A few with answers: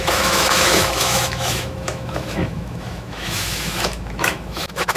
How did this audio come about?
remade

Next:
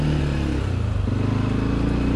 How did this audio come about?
recorded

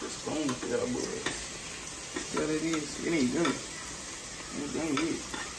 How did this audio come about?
recorded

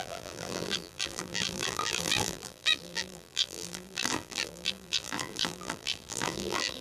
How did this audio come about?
remade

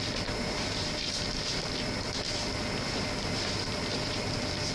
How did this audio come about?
remade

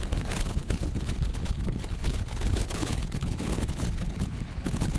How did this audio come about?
remade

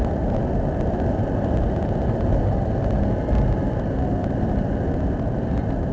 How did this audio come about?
recorded